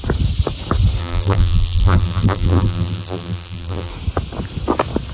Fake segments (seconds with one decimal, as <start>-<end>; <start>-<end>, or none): 1.0-3.9